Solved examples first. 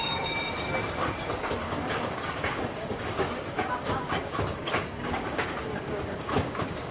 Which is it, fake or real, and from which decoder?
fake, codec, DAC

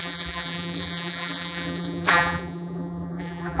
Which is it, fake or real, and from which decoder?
fake, vocoder, BigVGAN v2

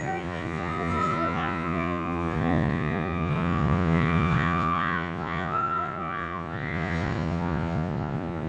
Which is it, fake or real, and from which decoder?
fake, vocoder, Vocos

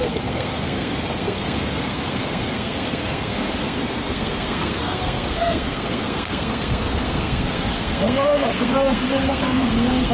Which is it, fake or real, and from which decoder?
fake, codec, SNAC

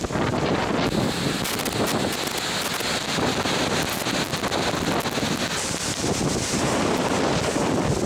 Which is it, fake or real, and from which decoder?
real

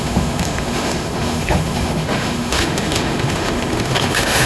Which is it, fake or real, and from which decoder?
fake, autoencoder, DAC-VAE